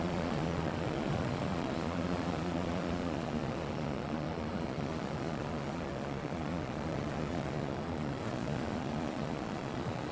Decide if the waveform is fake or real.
fake